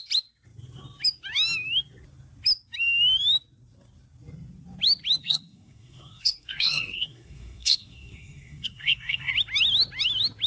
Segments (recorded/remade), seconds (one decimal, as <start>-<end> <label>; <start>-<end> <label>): 0.0-5.2 recorded; 5.2-9.3 remade; 9.3-10.5 recorded